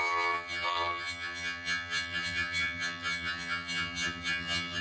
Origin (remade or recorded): remade